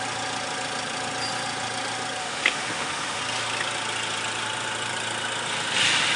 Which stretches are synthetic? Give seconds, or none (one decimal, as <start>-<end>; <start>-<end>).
2.2-3.2